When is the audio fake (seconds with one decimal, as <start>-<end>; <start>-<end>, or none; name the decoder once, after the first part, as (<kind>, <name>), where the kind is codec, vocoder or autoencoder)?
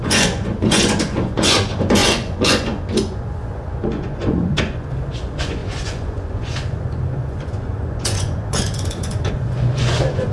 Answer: 0.0-10.3 (vocoder, Vocos)